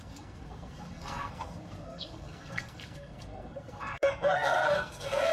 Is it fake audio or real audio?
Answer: fake